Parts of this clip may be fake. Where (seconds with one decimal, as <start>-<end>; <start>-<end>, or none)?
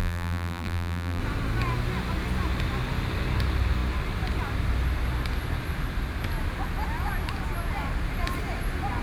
0.0-1.2